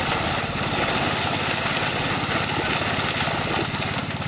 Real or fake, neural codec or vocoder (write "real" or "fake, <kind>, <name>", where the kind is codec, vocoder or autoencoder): real